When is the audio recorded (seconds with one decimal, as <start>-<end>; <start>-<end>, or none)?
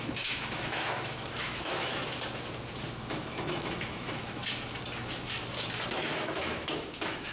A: 2.0-2.9; 4.4-5.9